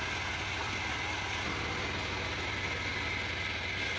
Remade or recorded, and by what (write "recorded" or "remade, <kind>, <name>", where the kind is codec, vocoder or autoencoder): recorded